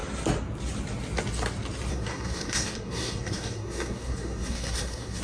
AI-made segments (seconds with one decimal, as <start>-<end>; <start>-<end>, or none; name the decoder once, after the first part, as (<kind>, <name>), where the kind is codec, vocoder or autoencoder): 1.9-5.2 (codec, SNAC)